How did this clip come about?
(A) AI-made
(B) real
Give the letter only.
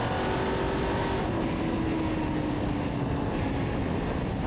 B